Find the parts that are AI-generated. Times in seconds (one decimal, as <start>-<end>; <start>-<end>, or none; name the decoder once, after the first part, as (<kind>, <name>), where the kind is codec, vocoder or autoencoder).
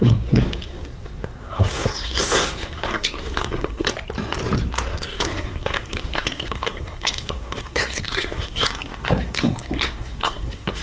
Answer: 0.0-3.9 (codec, SNAC); 4.6-10.8